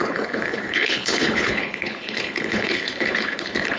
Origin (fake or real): fake